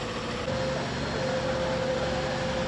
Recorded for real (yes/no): yes